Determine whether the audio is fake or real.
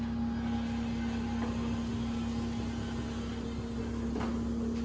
real